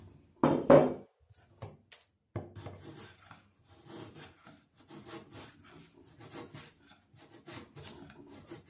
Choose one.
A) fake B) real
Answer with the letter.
B